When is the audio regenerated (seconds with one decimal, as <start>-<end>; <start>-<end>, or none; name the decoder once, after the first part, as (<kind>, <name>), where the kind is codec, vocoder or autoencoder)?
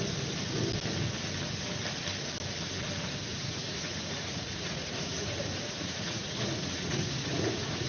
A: 3.3-7.9 (vocoder, Vocos)